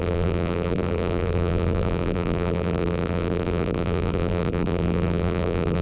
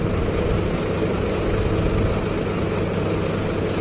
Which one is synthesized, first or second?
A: first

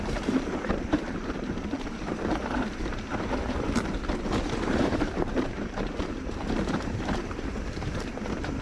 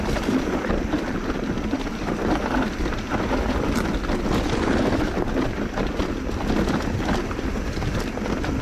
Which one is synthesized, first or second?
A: first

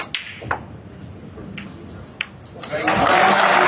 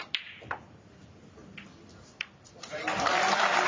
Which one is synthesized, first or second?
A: second